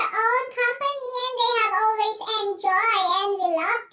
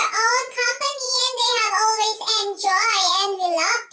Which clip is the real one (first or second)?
first